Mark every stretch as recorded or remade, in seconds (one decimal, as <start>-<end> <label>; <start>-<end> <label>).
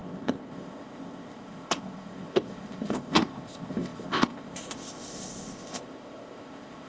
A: 0.0-6.9 remade